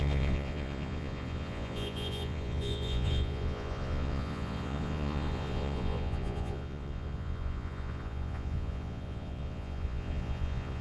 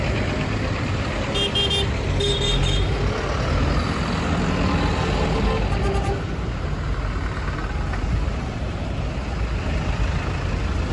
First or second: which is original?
second